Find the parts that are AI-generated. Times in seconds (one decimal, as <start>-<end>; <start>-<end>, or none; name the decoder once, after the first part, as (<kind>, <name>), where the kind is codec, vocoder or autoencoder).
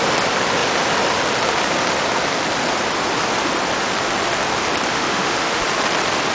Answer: 4.9-5.6 (autoencoder, DAC-VAE)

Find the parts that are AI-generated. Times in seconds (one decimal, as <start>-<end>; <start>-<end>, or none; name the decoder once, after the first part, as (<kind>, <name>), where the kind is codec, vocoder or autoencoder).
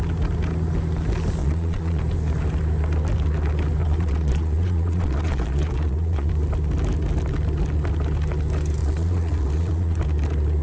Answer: 1.4-2.0 (vocoder, Vocos); 3.8-6.3; 8.8-10.0